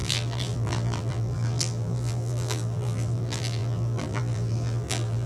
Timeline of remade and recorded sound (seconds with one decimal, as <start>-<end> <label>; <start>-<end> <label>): 0.0-5.3 remade